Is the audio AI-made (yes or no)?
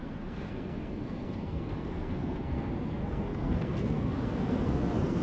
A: yes